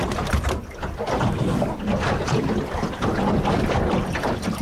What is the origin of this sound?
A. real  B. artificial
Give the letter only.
A